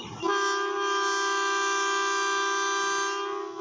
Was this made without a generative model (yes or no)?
yes